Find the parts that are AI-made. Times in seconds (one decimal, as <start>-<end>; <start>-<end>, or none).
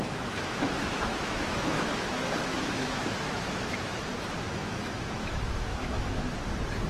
0.0-4.1; 4.6-6.4